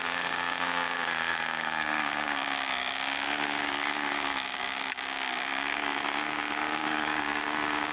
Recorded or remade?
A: remade